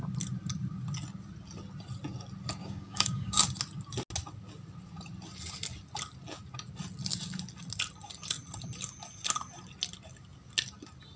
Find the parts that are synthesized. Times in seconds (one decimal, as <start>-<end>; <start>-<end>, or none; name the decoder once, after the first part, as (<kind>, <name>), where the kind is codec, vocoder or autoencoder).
2.6-3.4 (codec, DAC)